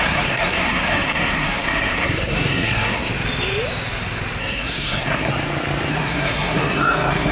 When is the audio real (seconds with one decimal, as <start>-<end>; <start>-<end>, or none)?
3.1-4.4; 5.3-5.9